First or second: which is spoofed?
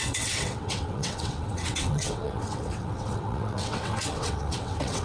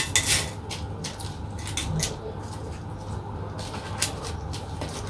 first